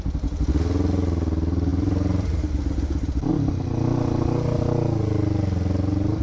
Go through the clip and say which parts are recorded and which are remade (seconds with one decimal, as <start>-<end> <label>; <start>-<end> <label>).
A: 0.0-1.7 recorded; 1.7-3.3 remade; 3.3-6.2 recorded

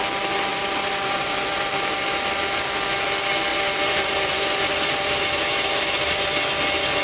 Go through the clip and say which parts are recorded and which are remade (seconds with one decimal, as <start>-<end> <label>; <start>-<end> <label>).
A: 0.0-0.5 recorded; 0.5-2.4 remade; 2.4-3.5 recorded; 3.5-6.2 remade; 6.2-7.0 recorded

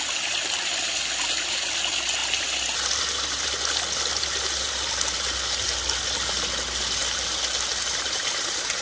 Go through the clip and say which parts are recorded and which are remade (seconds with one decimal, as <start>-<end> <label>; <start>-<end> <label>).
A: 0.0-8.8 recorded

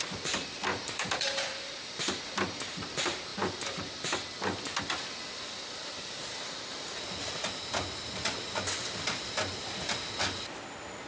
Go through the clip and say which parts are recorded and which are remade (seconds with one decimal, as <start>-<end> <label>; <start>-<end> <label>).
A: 0.0-0.7 recorded; 0.7-2.0 remade; 2.0-11.1 recorded

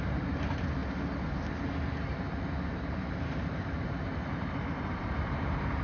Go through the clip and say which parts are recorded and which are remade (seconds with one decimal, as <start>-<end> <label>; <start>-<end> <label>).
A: 0.0-0.8 remade; 0.8-3.2 recorded; 3.2-4.1 remade; 4.1-4.8 recorded; 4.8-5.8 remade